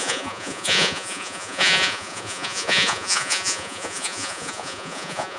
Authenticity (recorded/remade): remade